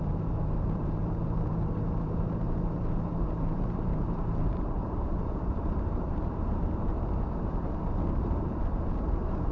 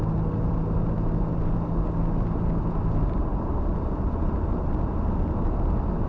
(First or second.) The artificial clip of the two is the first